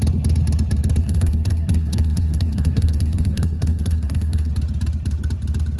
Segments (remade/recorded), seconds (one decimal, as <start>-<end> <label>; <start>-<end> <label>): 0.0-1.0 recorded; 1.0-4.5 remade; 4.5-5.8 recorded